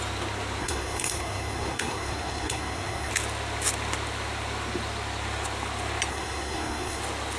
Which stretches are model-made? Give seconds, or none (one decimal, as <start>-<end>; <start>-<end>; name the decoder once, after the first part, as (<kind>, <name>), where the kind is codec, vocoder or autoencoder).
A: 0.6-3.1 (codec, SNAC); 6.1-7.0